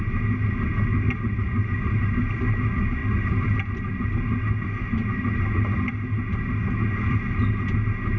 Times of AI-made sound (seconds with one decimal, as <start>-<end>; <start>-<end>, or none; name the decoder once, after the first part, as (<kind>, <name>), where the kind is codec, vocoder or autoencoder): 0.9-2.2 (vocoder, BigVGAN v2); 3.0-3.7